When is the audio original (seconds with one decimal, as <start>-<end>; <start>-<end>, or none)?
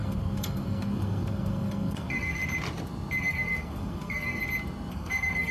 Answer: 2.4-3.2; 4.4-4.9